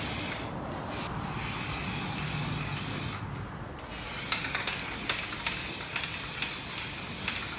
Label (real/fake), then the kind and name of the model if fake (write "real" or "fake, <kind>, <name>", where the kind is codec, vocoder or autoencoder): real